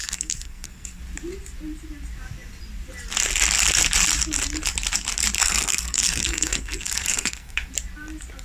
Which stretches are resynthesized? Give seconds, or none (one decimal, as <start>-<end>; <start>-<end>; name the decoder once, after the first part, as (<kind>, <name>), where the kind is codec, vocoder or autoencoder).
0.0-1.0 (codec, SNAC); 5.4-7.7